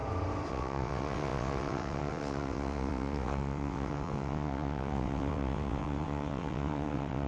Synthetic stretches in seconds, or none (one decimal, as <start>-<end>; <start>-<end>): 0.5-7.3